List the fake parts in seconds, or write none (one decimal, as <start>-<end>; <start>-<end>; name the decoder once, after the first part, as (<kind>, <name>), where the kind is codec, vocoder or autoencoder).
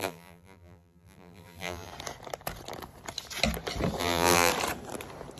0.0-1.9 (vocoder, BigVGAN v2); 4.0-4.5